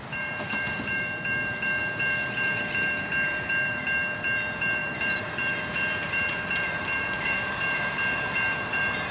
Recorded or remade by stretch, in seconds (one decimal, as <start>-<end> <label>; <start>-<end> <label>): 0.0-9.1 remade